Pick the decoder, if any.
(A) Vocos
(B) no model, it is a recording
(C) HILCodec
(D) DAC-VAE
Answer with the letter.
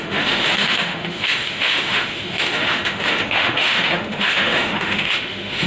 D